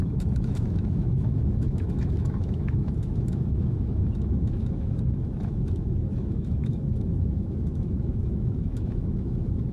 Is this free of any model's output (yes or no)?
no